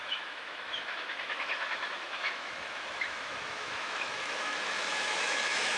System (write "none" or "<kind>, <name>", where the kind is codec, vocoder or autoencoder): autoencoder, DAC-VAE